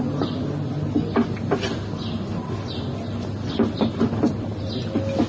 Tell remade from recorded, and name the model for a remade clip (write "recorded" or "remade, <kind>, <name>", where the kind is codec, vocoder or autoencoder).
recorded